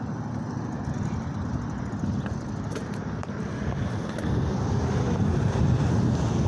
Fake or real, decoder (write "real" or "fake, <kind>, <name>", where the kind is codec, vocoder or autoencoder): real